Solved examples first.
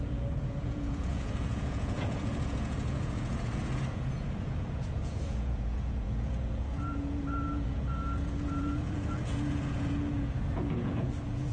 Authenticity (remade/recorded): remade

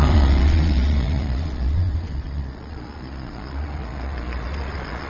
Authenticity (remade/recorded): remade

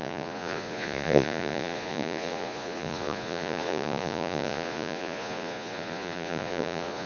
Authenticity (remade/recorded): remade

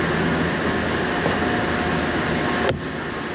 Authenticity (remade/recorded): recorded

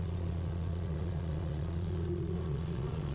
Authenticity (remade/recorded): remade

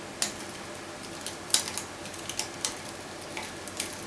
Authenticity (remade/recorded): recorded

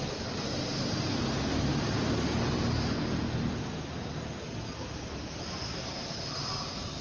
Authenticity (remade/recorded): recorded